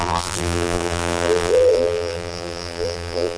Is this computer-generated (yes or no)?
yes